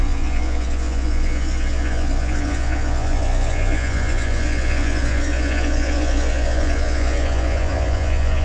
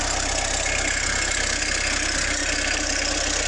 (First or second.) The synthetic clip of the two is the first